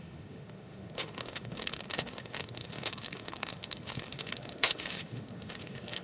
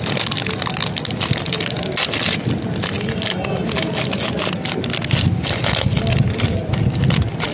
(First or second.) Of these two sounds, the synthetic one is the first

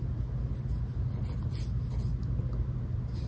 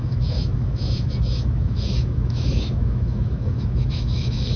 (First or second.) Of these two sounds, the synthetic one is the second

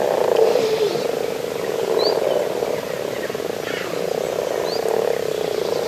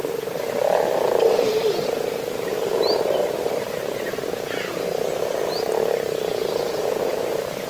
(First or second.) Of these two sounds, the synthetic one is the second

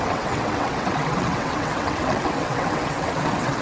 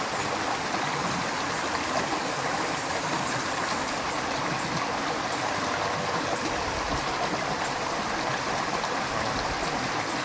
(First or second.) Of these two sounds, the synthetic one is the first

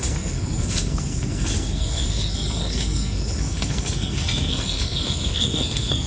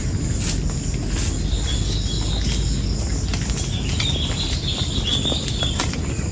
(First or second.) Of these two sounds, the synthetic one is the first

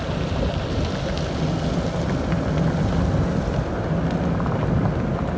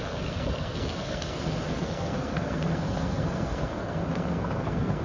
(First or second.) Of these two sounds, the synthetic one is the second